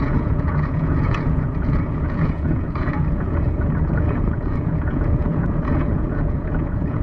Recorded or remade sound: remade